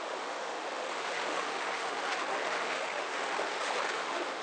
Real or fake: fake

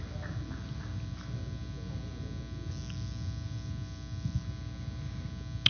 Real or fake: real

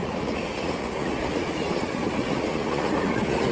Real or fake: fake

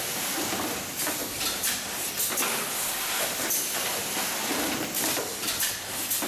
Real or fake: real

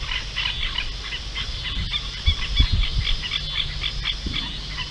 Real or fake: real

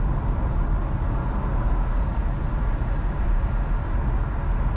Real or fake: real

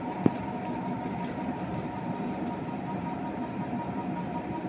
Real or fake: real